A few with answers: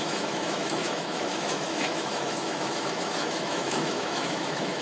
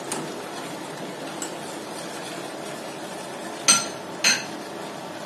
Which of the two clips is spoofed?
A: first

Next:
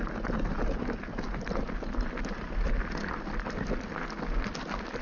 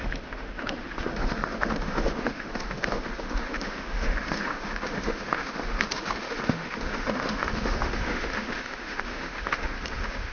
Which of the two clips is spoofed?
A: second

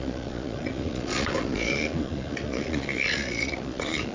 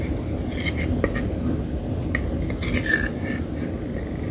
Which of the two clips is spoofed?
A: first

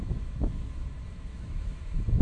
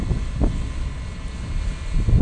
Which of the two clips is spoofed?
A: first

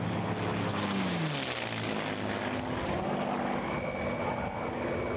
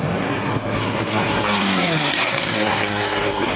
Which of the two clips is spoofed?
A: second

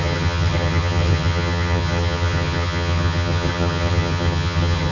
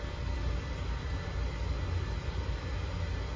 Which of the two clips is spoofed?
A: first